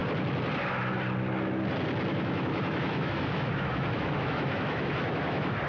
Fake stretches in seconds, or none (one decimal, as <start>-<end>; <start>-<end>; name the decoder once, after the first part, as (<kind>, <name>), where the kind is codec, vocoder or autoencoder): 2.1-5.7 (autoencoder, DAC-VAE)